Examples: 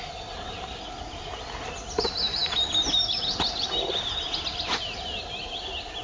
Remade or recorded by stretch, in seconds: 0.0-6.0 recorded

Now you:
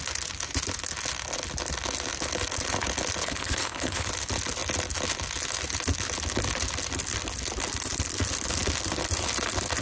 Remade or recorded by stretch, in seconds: 0.0-3.2 recorded; 3.2-4.1 remade; 4.1-9.8 recorded